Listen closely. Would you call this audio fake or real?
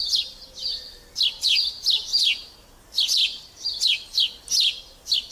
real